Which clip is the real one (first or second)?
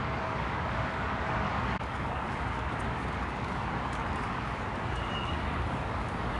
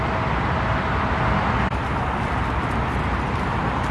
second